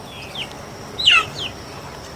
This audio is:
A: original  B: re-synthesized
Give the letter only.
A